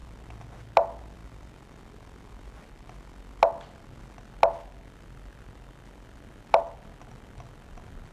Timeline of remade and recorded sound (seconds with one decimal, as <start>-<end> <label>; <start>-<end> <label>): 0.0-8.1 recorded